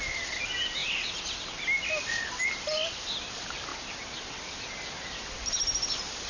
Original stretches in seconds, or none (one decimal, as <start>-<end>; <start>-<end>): 0.0-6.3

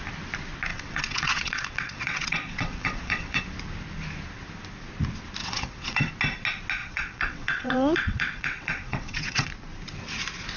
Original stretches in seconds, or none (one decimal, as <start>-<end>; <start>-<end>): 0.0-0.7; 3.4-5.4; 6.1-6.8; 9.5-10.6

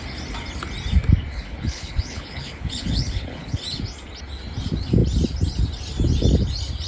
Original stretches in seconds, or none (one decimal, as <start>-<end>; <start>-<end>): 0.0-1.3; 3.6-6.9

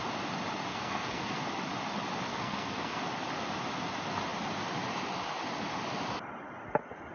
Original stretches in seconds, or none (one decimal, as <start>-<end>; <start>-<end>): 0.0-0.7; 1.4-2.3; 3.0-7.1

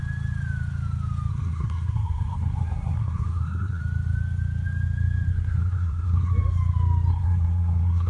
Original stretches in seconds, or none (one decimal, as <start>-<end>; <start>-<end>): 0.0-1.3; 3.8-5.3; 6.3-7.1

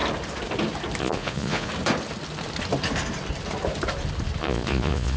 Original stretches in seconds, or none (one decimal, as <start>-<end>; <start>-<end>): 0.0-1.0; 1.7-4.4

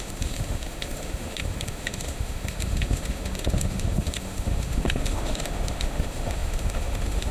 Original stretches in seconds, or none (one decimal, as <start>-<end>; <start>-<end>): none